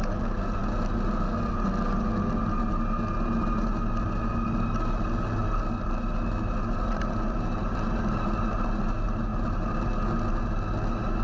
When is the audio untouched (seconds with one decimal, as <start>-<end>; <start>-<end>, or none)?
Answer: 0.0-11.2